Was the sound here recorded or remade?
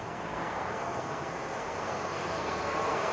remade